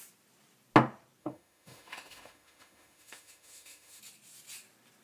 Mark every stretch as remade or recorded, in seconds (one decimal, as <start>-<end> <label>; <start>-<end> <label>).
0.0-1.2 recorded; 1.2-4.0 remade; 4.0-5.0 recorded